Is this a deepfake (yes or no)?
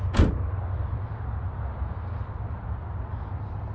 no